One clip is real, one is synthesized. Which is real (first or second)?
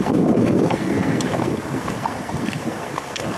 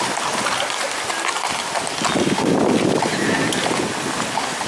second